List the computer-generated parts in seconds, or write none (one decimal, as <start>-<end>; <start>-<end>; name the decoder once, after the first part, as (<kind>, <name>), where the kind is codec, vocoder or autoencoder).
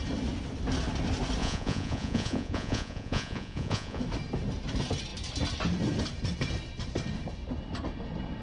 1.4-4.0 (vocoder, Vocos)